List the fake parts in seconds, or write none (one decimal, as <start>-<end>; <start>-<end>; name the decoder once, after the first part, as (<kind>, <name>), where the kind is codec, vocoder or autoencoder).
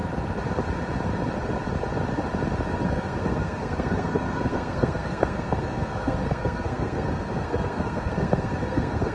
2.7-9.1 (codec, SNAC)